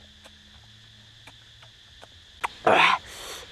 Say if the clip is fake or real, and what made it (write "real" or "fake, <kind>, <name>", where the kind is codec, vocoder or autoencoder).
real